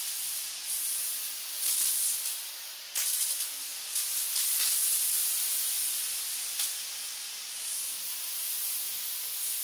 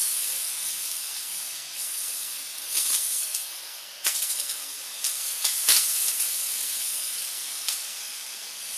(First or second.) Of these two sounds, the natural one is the first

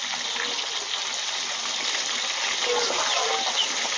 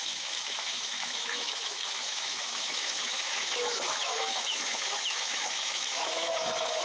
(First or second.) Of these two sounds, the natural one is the first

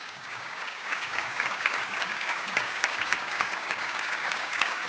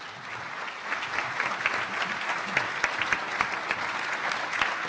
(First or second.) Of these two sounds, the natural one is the second